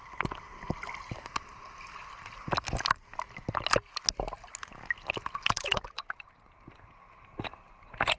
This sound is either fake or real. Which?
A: real